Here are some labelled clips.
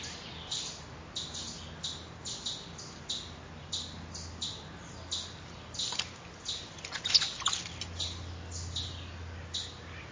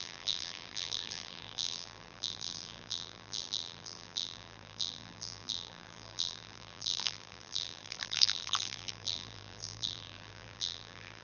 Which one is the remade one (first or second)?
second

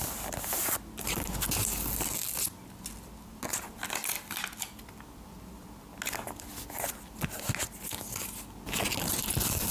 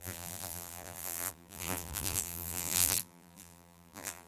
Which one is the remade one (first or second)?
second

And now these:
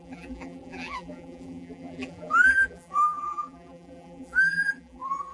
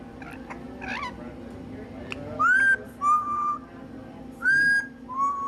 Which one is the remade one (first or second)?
first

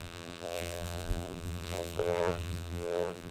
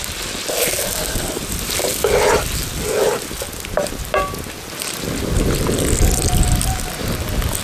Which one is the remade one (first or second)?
first